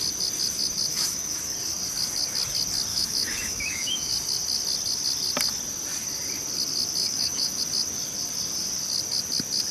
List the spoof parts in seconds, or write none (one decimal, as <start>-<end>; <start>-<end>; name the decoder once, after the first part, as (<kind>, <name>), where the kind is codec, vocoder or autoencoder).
0.9-1.4 (autoencoder, DAC-VAE); 2.9-4.1; 7.0-7.6